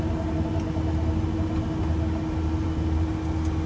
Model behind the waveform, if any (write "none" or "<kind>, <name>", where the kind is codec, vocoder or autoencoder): none